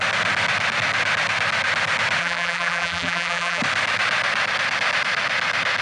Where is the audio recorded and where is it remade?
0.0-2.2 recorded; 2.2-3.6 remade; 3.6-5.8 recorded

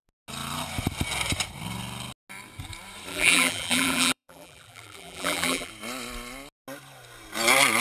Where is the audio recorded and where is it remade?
0.0-3.1 recorded; 3.1-5.7 remade; 5.7-7.8 recorded